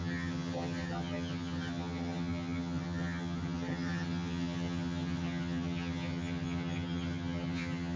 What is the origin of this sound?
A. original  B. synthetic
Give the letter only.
B